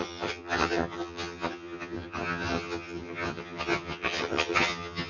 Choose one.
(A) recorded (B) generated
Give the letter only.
B